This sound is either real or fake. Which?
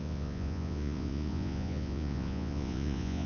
fake